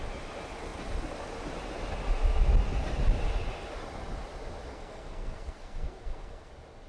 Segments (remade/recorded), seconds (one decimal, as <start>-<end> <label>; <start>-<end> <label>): 0.0-4.7 recorded; 4.7-6.5 remade; 6.5-6.9 recorded